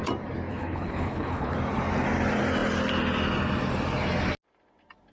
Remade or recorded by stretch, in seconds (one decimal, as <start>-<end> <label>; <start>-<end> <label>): 0.0-0.5 recorded; 0.5-1.5 remade; 1.5-5.1 recorded